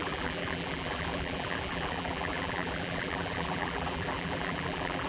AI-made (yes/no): yes